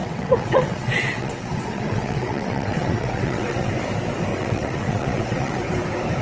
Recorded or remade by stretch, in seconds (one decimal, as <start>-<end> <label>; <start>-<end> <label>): 0.0-3.7 remade; 3.7-4.3 recorded; 4.3-5.6 remade; 5.6-6.2 recorded